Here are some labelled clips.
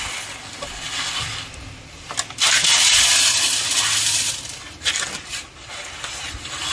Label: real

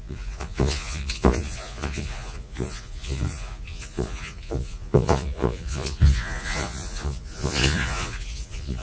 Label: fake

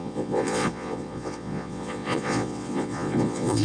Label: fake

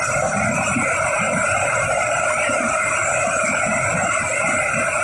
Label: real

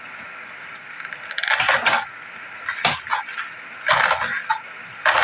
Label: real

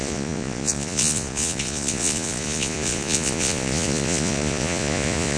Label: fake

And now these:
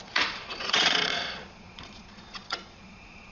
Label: fake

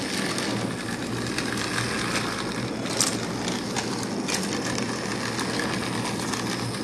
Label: real